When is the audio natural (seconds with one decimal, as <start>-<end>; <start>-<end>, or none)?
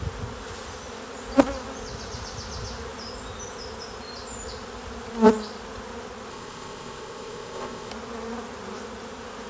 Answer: 0.0-6.3; 7.9-9.5